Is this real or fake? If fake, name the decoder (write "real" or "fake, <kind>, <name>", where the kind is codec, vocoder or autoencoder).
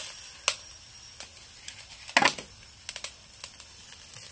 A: real